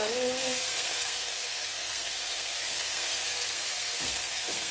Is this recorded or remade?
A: remade